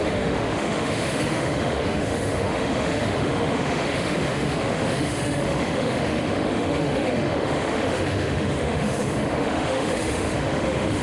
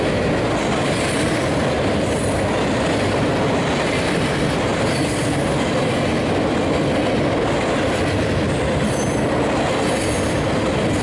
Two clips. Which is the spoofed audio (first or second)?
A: first